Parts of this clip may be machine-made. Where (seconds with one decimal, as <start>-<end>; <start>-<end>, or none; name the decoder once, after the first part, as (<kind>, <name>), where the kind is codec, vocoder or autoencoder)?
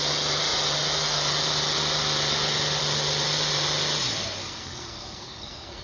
4.4-5.8 (codec, SNAC)